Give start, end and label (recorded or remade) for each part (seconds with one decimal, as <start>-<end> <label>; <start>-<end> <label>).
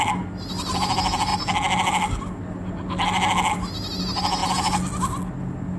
0.0-5.8 recorded